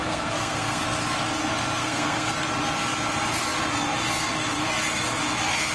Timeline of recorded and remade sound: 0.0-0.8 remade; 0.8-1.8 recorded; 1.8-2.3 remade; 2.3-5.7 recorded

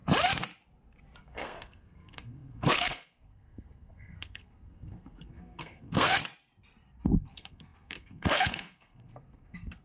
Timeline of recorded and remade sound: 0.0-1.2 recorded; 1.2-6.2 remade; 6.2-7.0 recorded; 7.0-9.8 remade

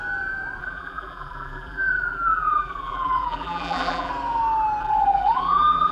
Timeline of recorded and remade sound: 0.0-0.6 recorded; 0.6-4.1 remade; 4.1-4.8 recorded; 4.8-5.9 remade